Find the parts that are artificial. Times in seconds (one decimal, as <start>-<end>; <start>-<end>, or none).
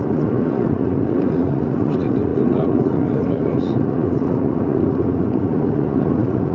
0.0-6.5